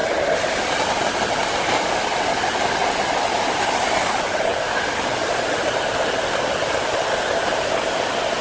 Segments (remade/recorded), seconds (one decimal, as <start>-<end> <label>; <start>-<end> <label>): 0.0-8.4 recorded